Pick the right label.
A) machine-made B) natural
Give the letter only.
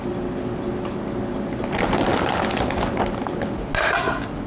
B